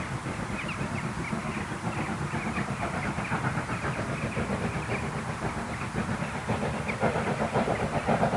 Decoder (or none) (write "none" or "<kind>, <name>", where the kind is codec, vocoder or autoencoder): vocoder, BigVGAN v2